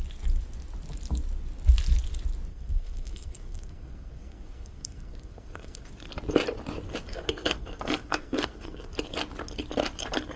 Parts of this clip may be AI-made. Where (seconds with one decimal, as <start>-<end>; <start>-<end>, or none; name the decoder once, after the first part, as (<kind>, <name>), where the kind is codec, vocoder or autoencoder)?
2.5-5.9 (codec, SNAC); 7.1-8.9